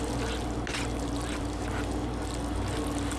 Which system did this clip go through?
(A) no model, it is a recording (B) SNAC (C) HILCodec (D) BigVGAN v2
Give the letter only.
A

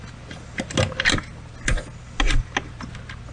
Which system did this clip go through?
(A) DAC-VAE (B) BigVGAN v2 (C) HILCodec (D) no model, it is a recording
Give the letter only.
D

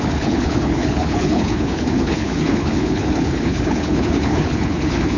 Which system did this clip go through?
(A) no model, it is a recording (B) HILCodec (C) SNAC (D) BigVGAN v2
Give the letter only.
B